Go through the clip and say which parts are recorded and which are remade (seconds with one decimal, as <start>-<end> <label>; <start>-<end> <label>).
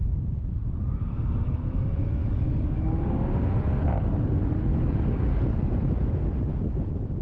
0.0-2.2 recorded; 2.2-3.1 remade; 3.1-4.7 recorded; 4.7-5.7 remade; 5.7-7.2 recorded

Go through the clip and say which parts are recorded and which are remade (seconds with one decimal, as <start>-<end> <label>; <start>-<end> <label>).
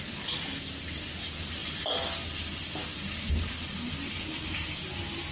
0.0-5.3 recorded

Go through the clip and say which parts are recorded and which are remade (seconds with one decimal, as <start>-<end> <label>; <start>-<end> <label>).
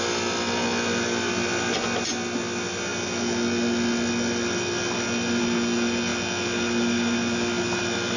0.0-8.2 recorded